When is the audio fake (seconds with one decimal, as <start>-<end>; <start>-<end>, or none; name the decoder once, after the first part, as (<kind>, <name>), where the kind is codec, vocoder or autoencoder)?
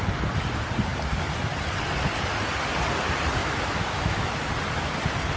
3.4-4.5 (autoencoder, DAC-VAE)